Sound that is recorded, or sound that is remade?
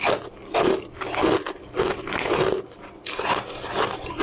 recorded